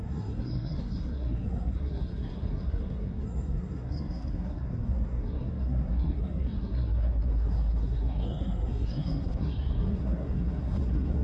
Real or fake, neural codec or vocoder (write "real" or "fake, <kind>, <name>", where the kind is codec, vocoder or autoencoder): fake, codec, SNAC